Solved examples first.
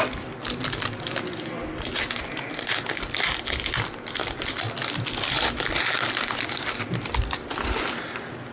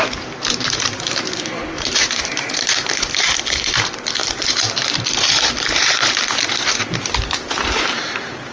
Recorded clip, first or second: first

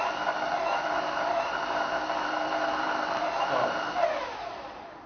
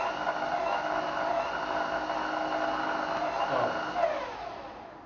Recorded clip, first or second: second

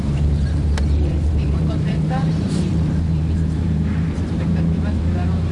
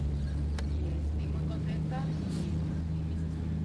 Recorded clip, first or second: second